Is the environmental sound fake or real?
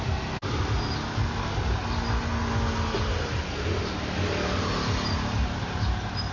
real